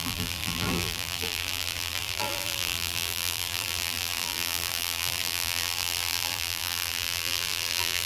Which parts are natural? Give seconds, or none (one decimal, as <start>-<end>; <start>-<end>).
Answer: none